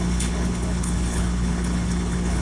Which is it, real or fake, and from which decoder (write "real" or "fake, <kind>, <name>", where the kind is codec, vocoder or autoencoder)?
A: fake, codec, HILCodec